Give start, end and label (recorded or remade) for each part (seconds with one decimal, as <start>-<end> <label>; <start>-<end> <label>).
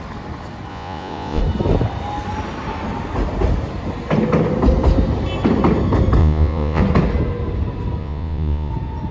0.0-0.7 recorded; 0.7-1.4 remade; 1.4-6.2 recorded; 6.2-6.8 remade; 6.8-8.0 recorded; 8.0-8.7 remade; 8.7-9.1 recorded